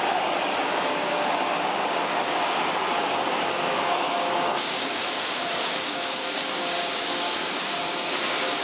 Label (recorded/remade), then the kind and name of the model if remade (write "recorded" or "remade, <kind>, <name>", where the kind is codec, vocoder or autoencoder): remade, codec, DAC